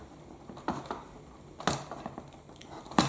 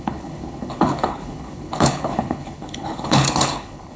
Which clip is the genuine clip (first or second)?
first